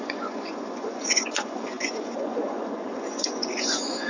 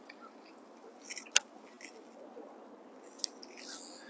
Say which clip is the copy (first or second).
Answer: first